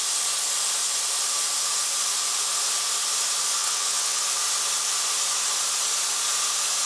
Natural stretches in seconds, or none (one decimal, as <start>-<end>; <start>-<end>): 0.0-3.6; 4.2-6.9